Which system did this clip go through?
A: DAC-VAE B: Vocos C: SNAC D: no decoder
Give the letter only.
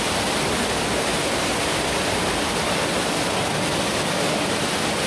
D